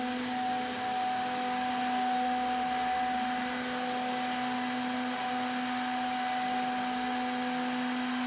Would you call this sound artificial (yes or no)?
no